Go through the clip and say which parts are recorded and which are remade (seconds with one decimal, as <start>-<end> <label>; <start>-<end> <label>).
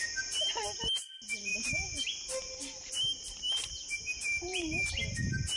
0.0-1.5 recorded; 1.5-4.9 remade; 4.9-5.6 recorded